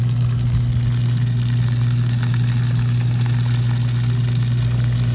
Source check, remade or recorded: recorded